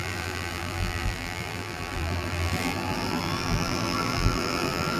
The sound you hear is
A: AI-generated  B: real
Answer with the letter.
A